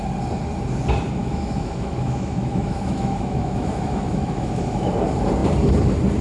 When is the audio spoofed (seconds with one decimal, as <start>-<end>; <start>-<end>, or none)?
1.2-4.9